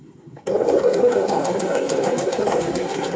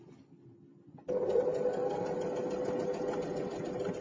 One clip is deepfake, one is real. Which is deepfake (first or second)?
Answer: first